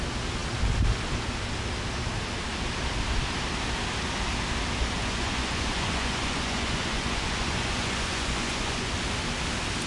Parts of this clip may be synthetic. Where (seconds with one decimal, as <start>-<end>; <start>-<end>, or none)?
5.0-8.9